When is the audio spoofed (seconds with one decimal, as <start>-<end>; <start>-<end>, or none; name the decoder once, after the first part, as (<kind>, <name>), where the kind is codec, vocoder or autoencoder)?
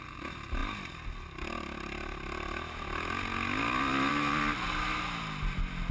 none